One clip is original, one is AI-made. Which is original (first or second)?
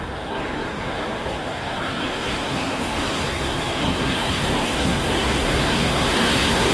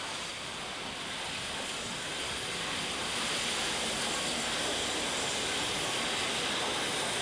second